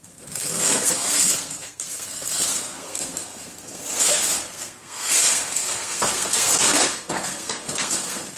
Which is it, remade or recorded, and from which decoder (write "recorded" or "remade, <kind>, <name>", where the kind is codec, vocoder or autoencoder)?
remade, codec, SNAC